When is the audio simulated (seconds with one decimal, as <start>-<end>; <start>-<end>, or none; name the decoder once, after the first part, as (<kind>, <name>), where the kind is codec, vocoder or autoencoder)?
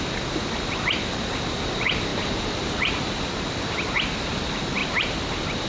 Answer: 2.1-3.2 (vocoder, BigVGAN v2); 4.8-5.7